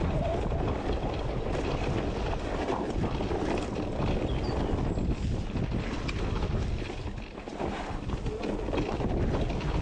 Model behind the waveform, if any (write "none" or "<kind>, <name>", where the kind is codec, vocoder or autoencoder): none